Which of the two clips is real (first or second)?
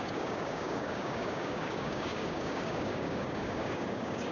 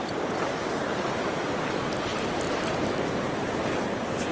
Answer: second